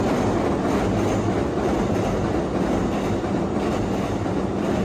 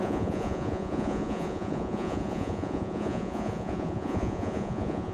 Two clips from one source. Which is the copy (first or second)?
second